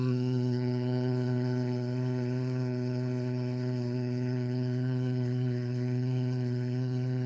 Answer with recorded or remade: remade